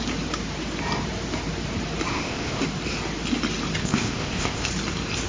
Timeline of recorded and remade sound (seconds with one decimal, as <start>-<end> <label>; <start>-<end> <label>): 0.0-2.1 recorded; 2.1-2.6 remade; 2.6-3.8 recorded; 3.8-4.7 remade; 4.7-5.3 recorded